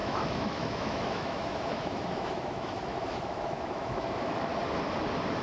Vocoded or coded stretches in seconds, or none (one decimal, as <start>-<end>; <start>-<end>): 0.0-4.5